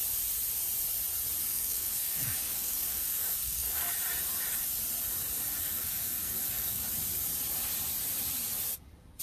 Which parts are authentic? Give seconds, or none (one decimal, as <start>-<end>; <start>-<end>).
0.0-1.5; 3.9-5.6; 6.8-9.2